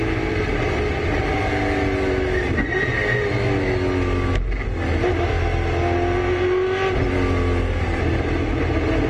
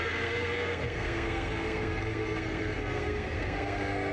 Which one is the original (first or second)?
first